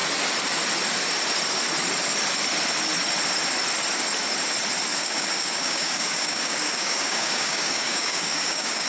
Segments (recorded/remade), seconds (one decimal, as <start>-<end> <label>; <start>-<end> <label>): 0.0-4.9 recorded; 4.9-8.9 remade